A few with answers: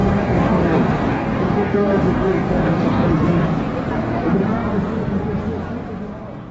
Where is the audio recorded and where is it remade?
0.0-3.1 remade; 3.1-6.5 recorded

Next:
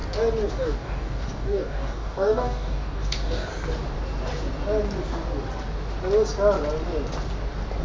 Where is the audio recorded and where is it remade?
0.0-0.5 recorded; 0.5-3.5 remade; 3.5-7.8 recorded

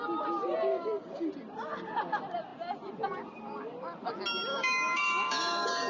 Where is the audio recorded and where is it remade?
0.0-0.7 recorded; 0.7-1.3 remade; 1.3-4.5 recorded; 4.5-5.9 remade

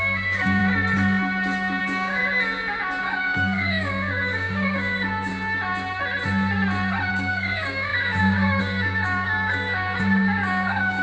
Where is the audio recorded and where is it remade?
0.0-0.6 remade; 0.6-1.8 recorded; 1.8-2.2 remade; 2.2-3.0 recorded; 3.0-5.3 remade; 5.3-7.1 recorded; 7.1-11.0 remade